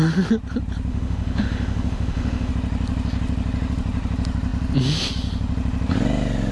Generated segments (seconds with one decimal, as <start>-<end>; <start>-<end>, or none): 0.9-2.5